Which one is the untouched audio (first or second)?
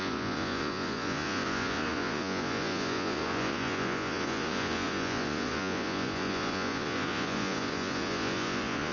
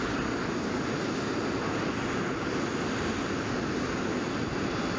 second